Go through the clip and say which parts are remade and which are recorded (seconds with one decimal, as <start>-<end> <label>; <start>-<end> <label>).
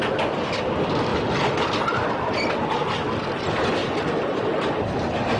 0.0-3.8 recorded; 3.8-4.7 remade; 4.7-5.4 recorded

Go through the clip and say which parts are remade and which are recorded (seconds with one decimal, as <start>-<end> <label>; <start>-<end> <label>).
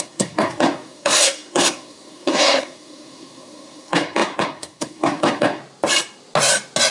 0.0-5.6 remade; 5.6-6.9 recorded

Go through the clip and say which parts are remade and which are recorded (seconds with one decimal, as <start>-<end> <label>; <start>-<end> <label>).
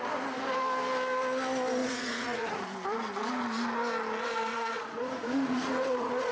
0.0-1.8 recorded; 1.8-2.6 remade; 2.6-4.5 recorded; 4.5-6.3 remade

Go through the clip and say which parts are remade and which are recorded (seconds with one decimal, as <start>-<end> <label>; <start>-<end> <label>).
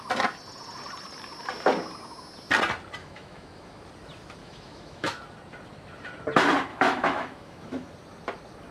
0.0-3.0 recorded; 3.0-3.8 remade; 3.8-4.4 recorded; 4.4-5.2 remade; 5.2-6.7 recorded; 6.7-7.9 remade; 7.9-8.7 recorded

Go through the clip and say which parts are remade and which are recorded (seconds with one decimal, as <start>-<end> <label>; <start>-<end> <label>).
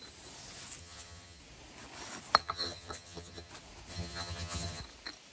0.0-0.8 recorded; 0.8-1.4 remade; 1.4-2.4 recorded; 2.4-3.5 remade; 3.5-3.9 recorded; 3.9-4.8 remade; 4.8-5.3 recorded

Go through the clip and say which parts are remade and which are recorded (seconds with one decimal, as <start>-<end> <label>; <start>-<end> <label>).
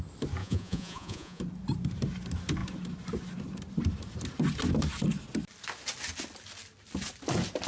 0.0-0.4 recorded; 0.4-1.4 remade; 1.4-7.7 recorded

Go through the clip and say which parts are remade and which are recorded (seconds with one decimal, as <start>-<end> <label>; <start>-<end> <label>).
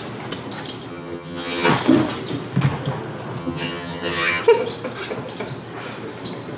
0.0-0.9 recorded; 0.9-1.7 remade; 1.7-3.4 recorded; 3.4-4.4 remade; 4.4-6.6 recorded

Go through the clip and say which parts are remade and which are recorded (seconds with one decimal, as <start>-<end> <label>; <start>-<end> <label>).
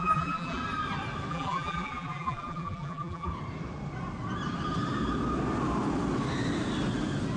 0.0-0.6 remade; 0.6-1.3 recorded; 1.3-3.3 remade; 3.3-7.4 recorded